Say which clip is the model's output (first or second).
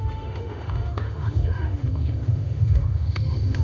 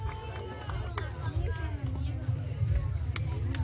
first